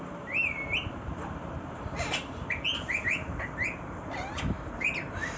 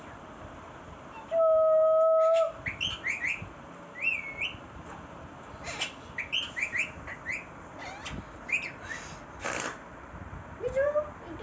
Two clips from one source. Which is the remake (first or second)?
first